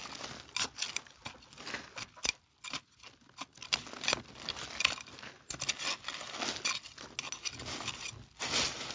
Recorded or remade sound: recorded